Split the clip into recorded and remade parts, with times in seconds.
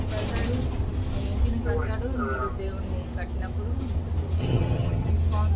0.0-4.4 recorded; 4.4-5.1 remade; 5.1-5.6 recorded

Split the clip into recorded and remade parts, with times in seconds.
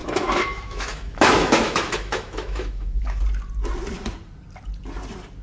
0.0-3.2 remade; 3.2-5.4 recorded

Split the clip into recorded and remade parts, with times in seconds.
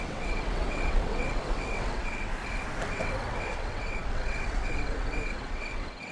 0.0-2.3 remade; 2.3-2.9 recorded; 2.9-6.1 remade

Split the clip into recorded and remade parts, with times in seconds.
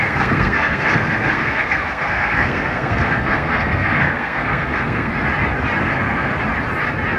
0.0-5.1 remade; 5.1-5.8 recorded; 5.8-6.3 remade; 6.3-7.2 recorded